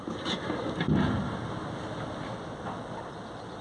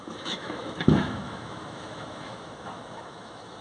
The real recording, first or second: first